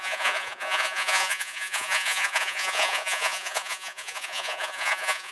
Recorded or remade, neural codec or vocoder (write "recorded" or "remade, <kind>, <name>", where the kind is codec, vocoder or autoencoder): remade, vocoder, Vocos